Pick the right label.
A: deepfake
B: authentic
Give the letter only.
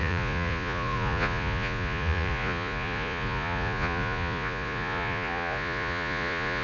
A